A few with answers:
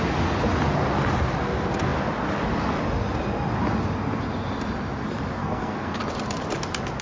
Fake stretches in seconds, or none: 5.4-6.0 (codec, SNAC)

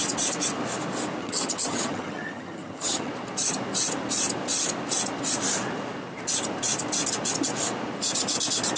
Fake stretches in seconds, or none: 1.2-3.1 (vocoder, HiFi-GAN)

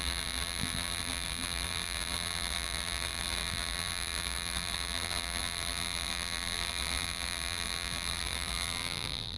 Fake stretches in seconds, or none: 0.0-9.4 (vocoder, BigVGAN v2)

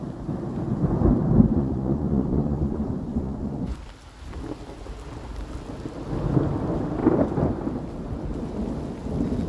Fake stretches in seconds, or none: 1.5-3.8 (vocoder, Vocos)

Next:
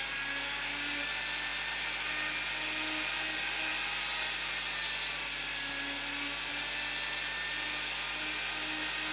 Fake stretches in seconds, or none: none

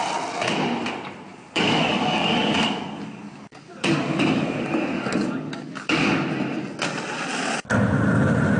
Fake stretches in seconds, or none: 1.3-6.2 (codec, DAC)